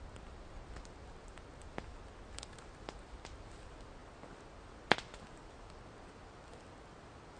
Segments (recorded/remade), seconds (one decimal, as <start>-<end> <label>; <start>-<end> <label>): 0.0-7.4 recorded